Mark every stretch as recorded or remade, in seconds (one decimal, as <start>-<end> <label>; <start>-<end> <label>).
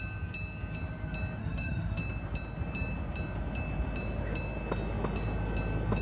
0.0-1.4 recorded; 1.4-2.0 remade; 2.0-6.0 recorded